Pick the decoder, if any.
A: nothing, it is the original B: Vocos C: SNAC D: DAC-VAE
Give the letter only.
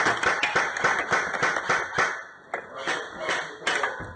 A